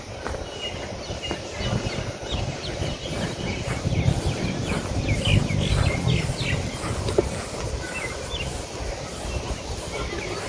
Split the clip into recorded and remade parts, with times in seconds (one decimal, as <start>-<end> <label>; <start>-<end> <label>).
0.0-10.5 recorded

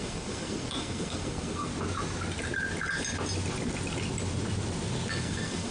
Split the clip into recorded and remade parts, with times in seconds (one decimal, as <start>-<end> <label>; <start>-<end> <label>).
0.0-1.7 remade; 1.7-5.1 recorded; 5.1-5.7 remade